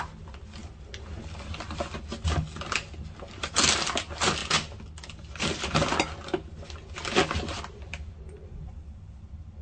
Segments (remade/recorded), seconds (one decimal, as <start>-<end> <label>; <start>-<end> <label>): 0.0-9.6 recorded